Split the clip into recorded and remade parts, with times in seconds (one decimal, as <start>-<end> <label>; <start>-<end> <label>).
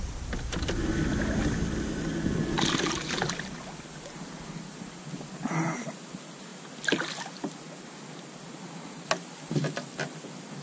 0.0-10.6 recorded